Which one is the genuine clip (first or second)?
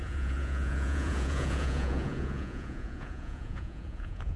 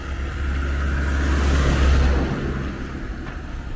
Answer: second